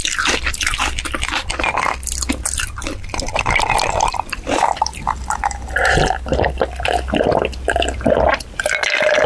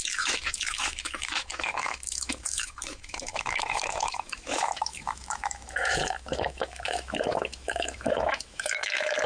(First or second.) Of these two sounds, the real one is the first